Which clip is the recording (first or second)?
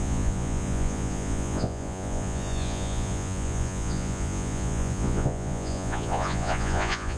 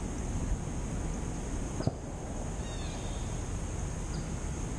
second